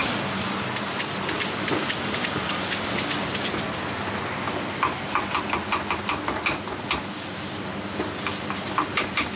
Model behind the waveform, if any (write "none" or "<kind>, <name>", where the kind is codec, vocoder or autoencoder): none